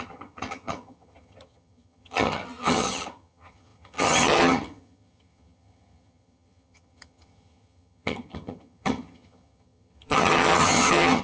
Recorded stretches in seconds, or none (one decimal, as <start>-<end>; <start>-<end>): none